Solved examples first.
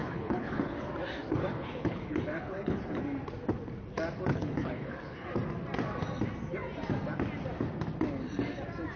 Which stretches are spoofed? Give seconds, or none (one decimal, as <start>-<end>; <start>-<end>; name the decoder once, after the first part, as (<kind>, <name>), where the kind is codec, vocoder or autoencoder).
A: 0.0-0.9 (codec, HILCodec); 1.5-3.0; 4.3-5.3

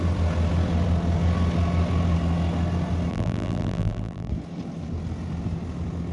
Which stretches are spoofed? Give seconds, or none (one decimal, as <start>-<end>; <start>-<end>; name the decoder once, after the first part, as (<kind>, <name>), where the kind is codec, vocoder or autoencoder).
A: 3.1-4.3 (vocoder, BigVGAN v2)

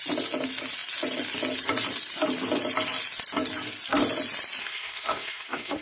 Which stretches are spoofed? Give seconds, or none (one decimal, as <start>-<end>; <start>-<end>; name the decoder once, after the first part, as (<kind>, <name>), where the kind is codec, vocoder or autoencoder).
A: 4.6-5.8 (codec, SNAC)